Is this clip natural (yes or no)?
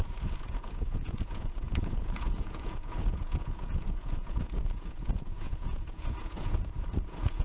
no